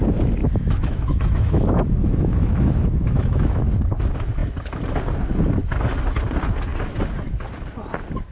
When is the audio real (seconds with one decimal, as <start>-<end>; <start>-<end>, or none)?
0.0-0.4; 3.8-8.3